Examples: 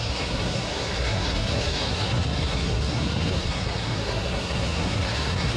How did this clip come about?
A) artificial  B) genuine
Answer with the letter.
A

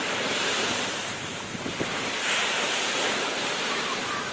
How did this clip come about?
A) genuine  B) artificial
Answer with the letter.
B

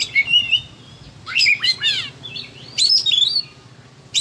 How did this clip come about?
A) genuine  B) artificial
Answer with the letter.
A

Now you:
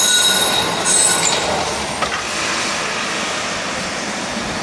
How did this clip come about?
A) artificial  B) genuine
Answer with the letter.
A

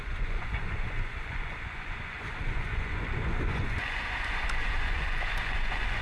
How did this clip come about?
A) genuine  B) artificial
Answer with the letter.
B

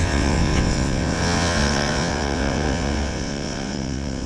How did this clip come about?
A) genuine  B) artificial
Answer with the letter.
B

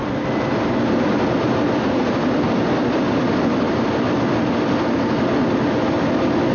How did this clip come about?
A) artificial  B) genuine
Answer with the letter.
B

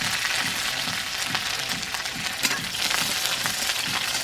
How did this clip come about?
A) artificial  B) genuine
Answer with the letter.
B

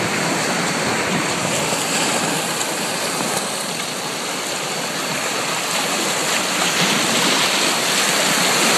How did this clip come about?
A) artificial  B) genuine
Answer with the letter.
B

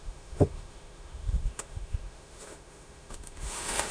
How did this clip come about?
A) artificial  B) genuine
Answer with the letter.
A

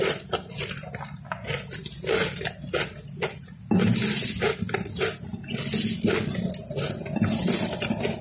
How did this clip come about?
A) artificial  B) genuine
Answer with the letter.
B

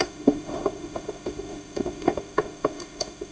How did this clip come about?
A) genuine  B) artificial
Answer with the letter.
B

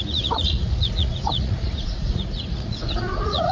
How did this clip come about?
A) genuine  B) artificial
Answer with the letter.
B